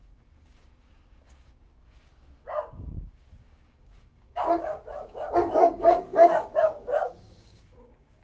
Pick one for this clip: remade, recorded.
remade